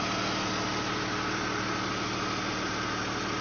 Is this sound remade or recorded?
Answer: recorded